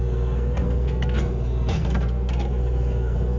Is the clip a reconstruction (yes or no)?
yes